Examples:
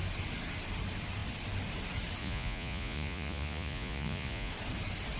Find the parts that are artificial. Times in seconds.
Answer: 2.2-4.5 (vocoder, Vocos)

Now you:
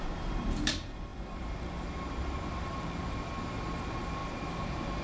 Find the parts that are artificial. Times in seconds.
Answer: 0.0-5.0 (vocoder, BigVGAN v2)

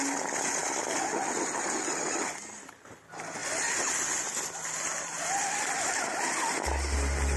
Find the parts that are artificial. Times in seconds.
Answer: none

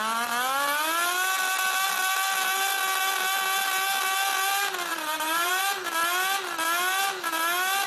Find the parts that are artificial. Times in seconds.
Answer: 4.9-5.6 (vocoder, BigVGAN v2)